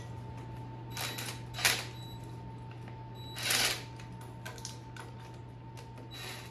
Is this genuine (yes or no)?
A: yes